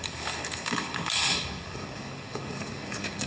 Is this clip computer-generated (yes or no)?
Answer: yes